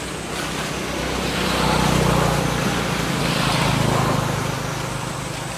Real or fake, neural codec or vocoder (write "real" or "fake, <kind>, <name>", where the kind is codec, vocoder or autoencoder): real